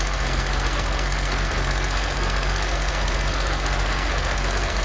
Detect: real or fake fake